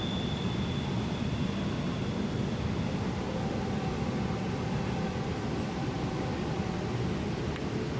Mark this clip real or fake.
real